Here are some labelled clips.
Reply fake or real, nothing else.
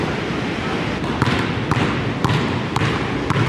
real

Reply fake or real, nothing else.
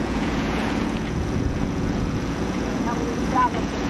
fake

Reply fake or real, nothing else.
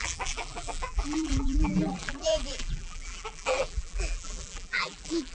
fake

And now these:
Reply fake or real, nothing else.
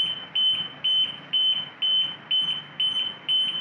real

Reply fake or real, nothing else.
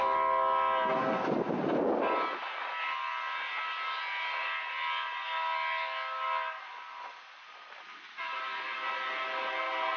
real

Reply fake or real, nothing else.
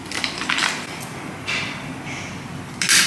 real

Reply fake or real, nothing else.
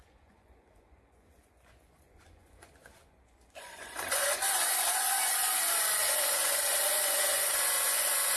fake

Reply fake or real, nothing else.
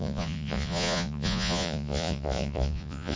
fake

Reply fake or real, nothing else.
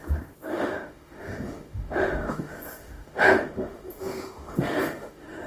fake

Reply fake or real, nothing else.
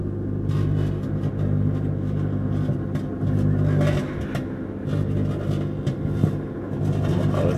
real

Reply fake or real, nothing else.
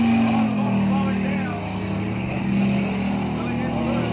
real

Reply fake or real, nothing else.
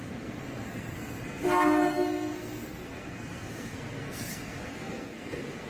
fake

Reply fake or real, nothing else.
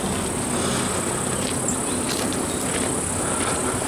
real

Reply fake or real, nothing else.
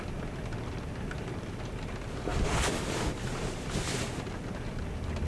real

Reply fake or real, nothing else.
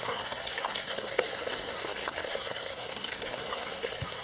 fake